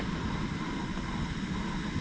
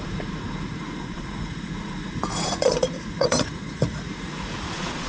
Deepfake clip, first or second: second